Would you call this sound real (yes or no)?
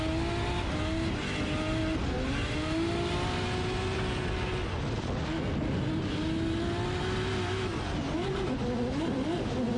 yes